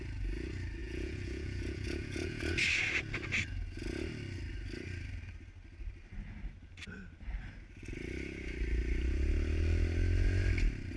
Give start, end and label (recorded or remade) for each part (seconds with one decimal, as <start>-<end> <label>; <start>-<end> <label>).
0.0-0.8 recorded; 0.8-2.5 remade; 2.5-11.0 recorded